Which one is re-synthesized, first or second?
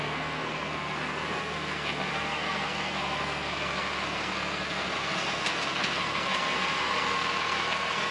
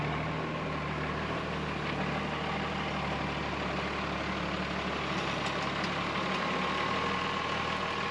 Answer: first